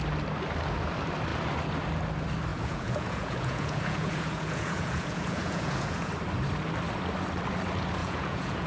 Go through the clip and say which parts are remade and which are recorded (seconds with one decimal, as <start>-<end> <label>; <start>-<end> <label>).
0.0-2.5 recorded; 2.5-6.1 remade; 6.1-8.0 recorded; 8.0-8.7 remade